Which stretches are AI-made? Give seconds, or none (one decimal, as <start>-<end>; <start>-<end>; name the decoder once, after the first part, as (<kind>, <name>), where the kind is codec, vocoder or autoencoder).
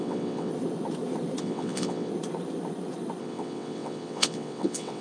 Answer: 0.0-0.5 (vocoder, WaveNeXt); 1.4-2.1; 3.2-5.0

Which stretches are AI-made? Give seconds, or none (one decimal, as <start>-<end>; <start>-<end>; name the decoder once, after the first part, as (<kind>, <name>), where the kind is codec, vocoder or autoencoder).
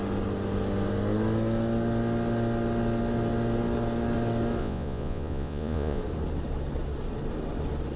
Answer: 4.6-6.0 (vocoder, Vocos)